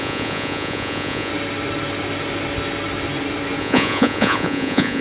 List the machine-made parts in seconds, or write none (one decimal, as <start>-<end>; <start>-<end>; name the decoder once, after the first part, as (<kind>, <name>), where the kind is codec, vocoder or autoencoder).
0.0-1.3 (vocoder, Vocos); 3.6-5.0